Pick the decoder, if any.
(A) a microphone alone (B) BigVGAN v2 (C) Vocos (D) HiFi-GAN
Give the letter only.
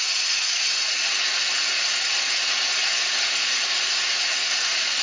C